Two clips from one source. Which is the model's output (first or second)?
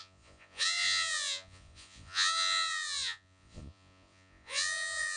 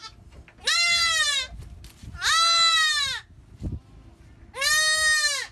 first